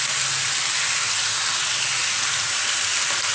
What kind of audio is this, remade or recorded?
recorded